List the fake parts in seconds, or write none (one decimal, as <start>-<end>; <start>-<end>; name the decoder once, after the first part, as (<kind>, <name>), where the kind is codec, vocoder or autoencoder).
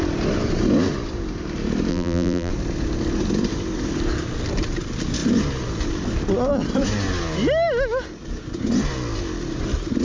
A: 1.9-2.5 (vocoder, BigVGAN v2)